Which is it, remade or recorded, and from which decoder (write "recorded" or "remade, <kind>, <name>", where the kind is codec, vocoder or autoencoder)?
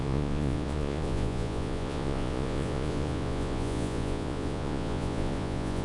remade, vocoder, Vocos